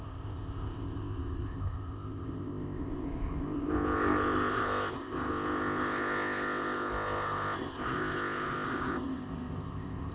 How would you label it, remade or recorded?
remade